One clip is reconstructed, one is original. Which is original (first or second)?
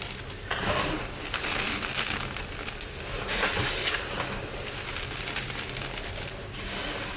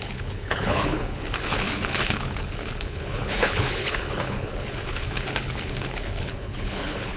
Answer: first